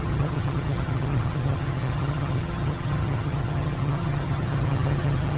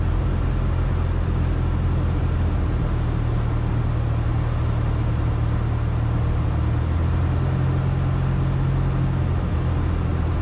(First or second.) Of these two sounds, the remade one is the first